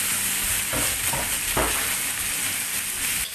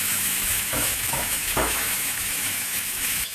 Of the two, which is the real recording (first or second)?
first